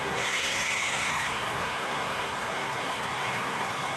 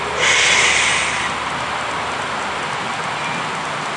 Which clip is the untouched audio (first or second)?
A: second